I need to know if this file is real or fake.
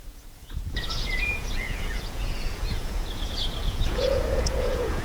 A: fake